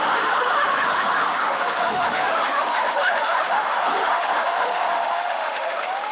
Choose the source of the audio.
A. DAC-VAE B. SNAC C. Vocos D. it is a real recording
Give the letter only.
A